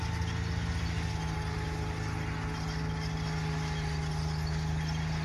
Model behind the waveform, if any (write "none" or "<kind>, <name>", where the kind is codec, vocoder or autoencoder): none